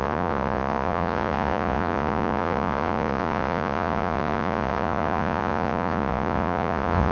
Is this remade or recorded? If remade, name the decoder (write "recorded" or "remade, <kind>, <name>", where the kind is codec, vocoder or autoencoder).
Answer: remade, vocoder, Vocos